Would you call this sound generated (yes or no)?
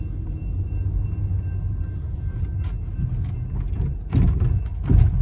no